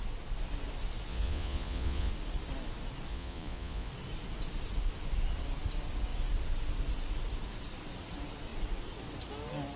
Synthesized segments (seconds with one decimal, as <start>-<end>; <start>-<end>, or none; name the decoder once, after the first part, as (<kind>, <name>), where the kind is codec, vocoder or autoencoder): 1.1-2.1 (vocoder, Vocos); 3.1-3.9